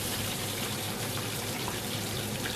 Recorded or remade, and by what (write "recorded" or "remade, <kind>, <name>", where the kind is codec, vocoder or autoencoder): remade, vocoder, BigVGAN v2